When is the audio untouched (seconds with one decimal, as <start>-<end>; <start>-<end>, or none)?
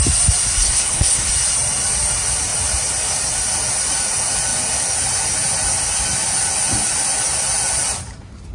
0.0-0.6; 1.3-8.5